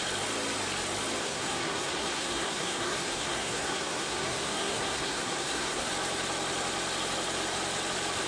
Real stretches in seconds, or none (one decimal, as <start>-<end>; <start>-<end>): 0.0-1.2; 5.9-8.3